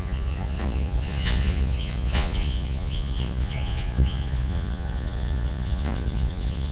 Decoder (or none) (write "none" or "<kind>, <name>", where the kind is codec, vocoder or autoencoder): vocoder, Vocos